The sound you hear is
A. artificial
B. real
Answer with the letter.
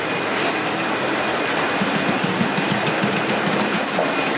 B